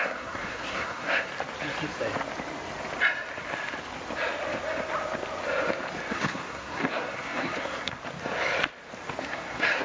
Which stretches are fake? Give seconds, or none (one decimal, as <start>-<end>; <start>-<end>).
0.0-1.3; 6.1-8.0; 9.2-9.8